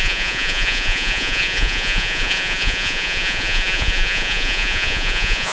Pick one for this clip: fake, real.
fake